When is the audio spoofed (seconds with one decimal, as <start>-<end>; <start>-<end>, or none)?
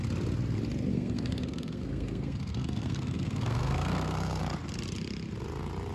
0.9-4.4